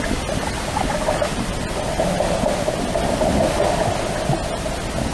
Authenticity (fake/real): real